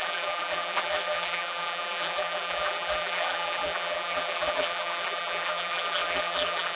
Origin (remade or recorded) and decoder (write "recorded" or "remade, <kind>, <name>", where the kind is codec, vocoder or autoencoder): remade, vocoder, BigVGAN v2